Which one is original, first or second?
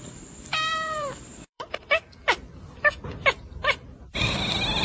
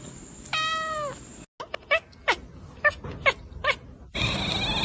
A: second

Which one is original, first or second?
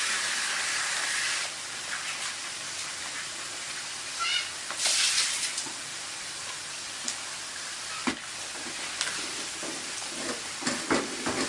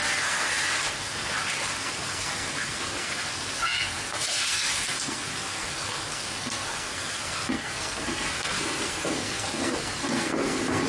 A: first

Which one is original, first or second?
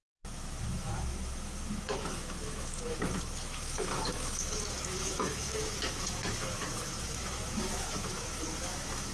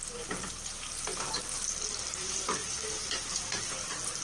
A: second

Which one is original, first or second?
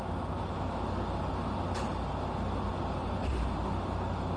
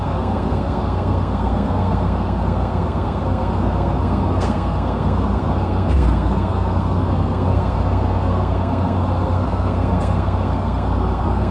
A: first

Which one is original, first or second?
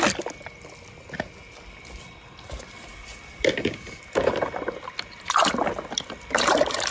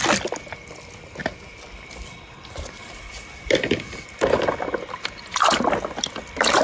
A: first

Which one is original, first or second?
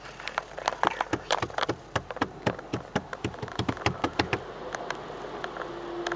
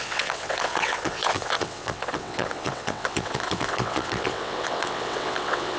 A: first